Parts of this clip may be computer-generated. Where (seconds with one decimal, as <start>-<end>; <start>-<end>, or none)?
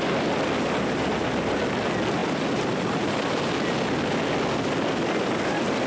none